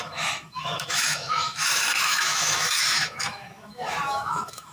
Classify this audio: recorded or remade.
remade